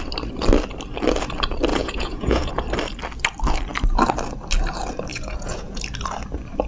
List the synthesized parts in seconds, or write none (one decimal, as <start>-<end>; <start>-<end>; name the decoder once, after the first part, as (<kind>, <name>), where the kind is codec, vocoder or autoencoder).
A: 1.7-2.5 (vocoder, Vocos); 5.1-5.8